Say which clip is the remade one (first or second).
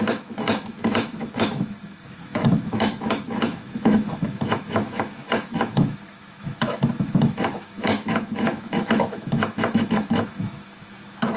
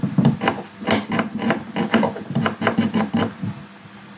first